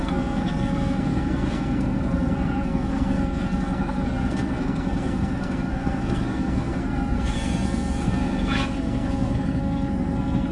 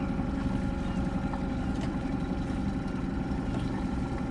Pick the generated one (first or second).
first